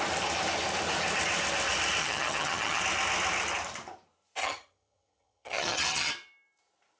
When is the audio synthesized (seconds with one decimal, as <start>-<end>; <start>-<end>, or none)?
2.0-2.8; 4.4-6.1